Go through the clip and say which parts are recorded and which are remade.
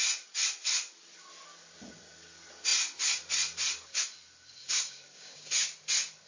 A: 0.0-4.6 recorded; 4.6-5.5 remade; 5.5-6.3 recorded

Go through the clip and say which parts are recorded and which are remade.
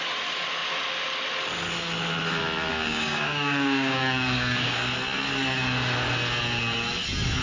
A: 0.0-2.7 recorded; 2.7-4.8 remade; 4.8-7.4 recorded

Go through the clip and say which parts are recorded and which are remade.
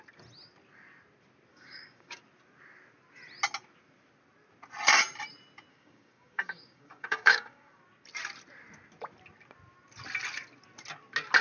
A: 0.0-1.5 recorded; 1.5-2.2 remade; 2.2-5.7 recorded; 5.7-7.8 remade; 7.8-11.4 recorded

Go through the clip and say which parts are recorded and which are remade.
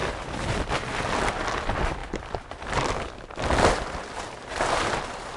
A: 0.0-5.4 recorded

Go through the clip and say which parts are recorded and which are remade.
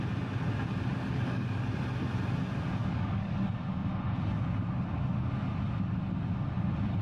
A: 0.0-0.9 recorded; 0.9-1.6 remade; 1.6-2.8 recorded; 2.8-3.5 remade; 3.5-7.0 recorded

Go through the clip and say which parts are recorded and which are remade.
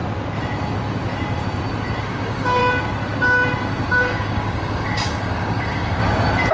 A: 0.0-2.0 recorded; 2.0-2.6 remade; 2.6-3.9 recorded; 3.9-6.0 remade; 6.0-6.5 recorded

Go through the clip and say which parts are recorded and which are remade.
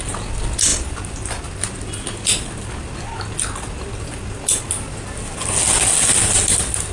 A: 0.0-6.9 recorded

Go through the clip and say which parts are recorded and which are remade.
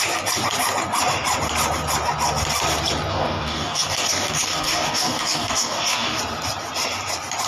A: 0.0-3.1 recorded; 3.1-6.2 remade; 6.2-7.5 recorded